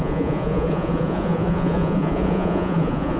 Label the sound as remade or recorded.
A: remade